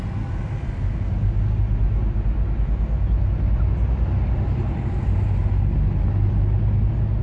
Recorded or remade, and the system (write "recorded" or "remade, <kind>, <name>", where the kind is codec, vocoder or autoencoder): recorded